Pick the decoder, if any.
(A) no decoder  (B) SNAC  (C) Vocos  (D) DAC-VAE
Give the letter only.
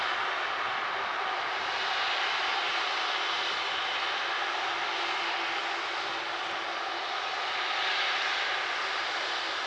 A